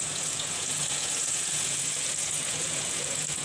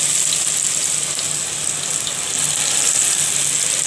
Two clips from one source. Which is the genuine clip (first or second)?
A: second